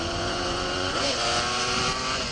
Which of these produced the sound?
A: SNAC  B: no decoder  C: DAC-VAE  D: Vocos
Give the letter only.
D